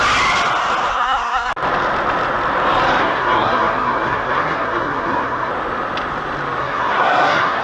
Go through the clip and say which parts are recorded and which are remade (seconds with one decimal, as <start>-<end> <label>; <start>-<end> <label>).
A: 0.0-0.9 recorded; 0.9-1.5 remade; 1.5-3.0 recorded; 3.0-5.5 remade; 5.5-6.6 recorded; 6.6-7.6 remade